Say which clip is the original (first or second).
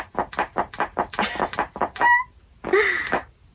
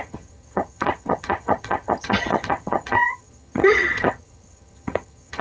first